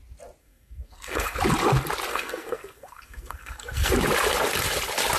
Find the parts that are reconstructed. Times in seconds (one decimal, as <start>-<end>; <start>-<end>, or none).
0.4-1.4; 2.1-3.9